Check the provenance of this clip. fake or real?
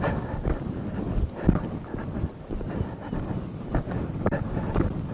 real